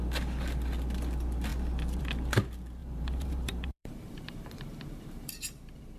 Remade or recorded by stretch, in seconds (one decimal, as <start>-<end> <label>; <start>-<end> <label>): 0.0-2.8 recorded; 2.8-5.3 remade; 5.3-6.0 recorded